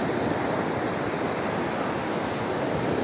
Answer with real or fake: real